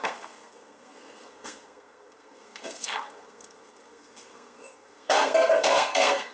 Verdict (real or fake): fake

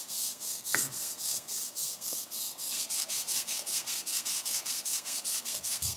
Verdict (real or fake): fake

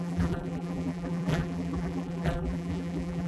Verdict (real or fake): fake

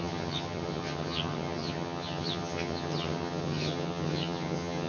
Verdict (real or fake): fake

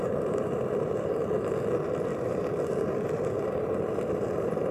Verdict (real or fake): fake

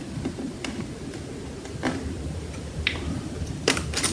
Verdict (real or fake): fake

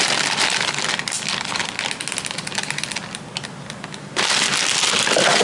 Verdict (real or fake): real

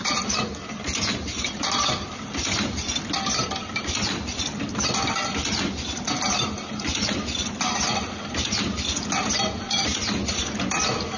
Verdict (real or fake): real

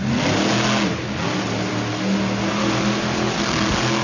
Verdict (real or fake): real